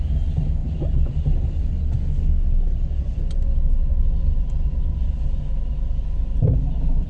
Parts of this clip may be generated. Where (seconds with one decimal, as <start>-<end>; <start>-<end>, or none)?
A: none